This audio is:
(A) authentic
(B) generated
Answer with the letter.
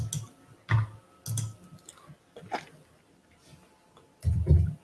A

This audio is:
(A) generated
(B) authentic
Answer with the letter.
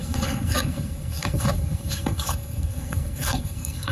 A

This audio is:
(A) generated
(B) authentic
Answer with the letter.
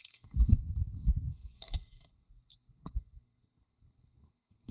A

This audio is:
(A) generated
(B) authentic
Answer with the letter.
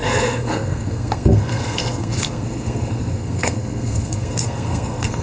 A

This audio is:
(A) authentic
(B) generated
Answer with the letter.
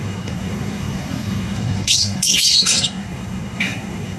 B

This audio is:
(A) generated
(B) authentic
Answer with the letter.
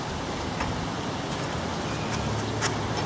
B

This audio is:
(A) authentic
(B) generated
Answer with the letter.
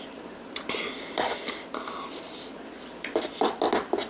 A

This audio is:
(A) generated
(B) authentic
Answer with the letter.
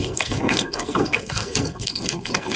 A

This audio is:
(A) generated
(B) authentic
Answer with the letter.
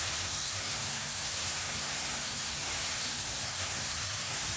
A